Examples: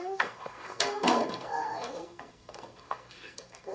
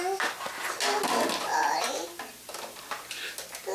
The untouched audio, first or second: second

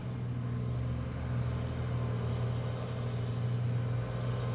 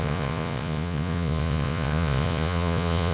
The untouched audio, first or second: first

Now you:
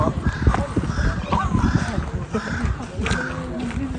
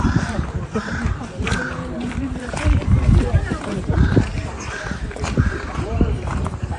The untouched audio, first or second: first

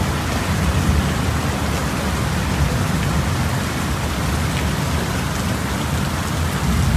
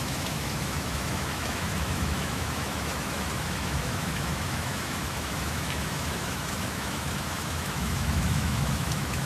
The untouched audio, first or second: first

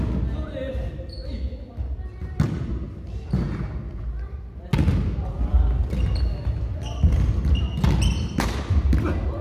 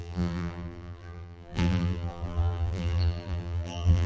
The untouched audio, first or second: first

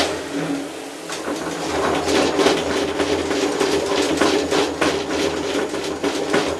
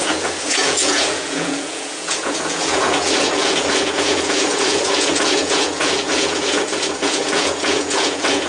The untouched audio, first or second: first